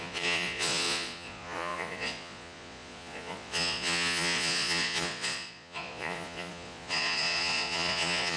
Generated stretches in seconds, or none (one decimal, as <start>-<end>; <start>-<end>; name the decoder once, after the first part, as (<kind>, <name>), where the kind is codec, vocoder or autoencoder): 0.0-8.4 (vocoder, Vocos)